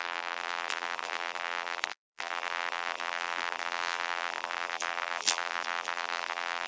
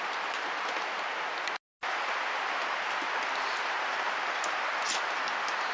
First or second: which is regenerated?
first